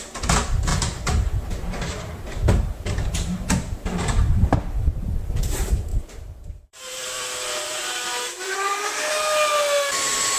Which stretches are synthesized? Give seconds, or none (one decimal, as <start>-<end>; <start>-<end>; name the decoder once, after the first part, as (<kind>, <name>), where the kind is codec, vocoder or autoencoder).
0.7-5.4 (vocoder, BigVGAN v2); 5.9-8.8